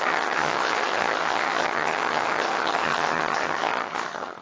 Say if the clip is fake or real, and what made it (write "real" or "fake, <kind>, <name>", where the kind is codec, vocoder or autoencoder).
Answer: fake, vocoder, HiFi-GAN